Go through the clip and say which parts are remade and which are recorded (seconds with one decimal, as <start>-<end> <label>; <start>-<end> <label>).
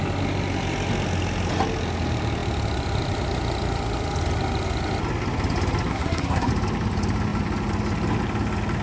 0.0-5.9 recorded; 5.9-6.5 remade; 6.5-8.8 recorded